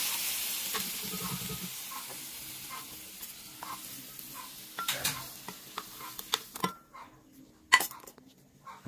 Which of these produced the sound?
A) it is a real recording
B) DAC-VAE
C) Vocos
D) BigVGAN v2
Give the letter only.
A